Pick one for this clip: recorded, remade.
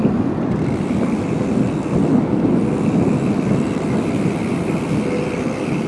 recorded